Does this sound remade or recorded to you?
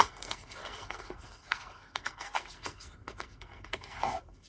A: remade